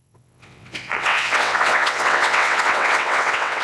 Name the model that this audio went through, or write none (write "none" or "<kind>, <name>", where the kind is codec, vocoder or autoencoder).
vocoder, WaveNeXt